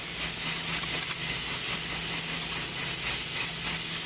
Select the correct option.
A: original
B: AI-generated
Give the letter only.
A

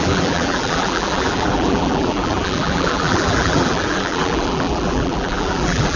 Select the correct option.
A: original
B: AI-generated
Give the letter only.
B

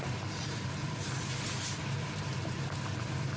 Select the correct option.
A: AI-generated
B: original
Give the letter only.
A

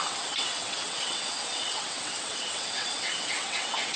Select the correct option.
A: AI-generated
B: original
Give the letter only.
A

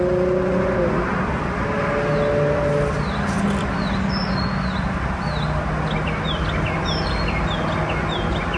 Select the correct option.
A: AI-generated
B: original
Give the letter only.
B